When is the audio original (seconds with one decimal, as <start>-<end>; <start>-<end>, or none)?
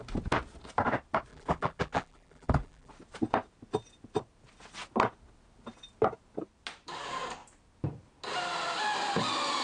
0.0-1.3; 2.9-9.6